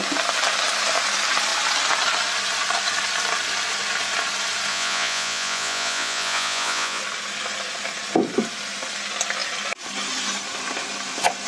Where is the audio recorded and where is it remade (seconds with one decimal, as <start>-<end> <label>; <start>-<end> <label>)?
0.0-4.7 recorded; 4.7-7.0 remade; 7.0-11.5 recorded